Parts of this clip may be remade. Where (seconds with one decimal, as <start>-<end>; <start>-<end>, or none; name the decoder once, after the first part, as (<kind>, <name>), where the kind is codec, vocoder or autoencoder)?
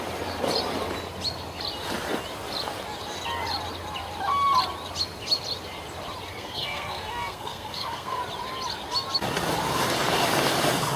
6.3-8.2 (codec, SNAC)